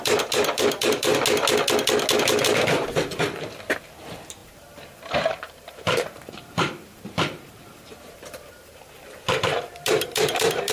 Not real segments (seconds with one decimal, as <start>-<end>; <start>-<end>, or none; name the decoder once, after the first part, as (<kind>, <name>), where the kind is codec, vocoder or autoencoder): 0.0-1.1 (vocoder, BigVGAN v2); 3.8-10.7